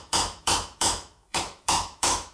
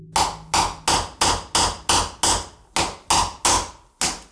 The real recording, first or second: second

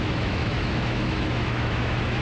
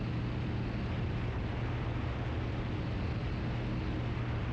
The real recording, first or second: second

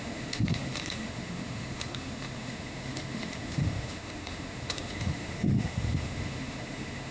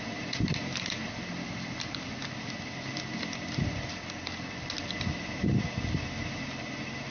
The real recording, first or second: second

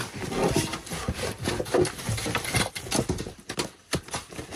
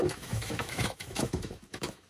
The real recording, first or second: first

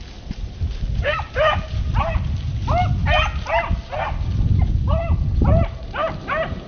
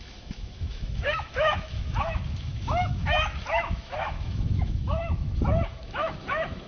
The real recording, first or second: first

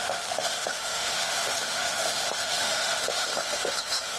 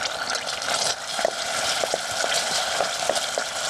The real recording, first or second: second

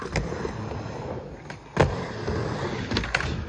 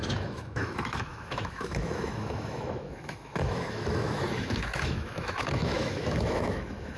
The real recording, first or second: first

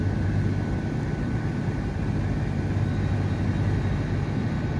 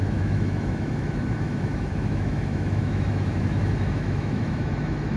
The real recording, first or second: first